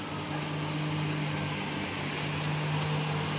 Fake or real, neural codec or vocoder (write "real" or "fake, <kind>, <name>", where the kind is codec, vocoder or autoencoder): real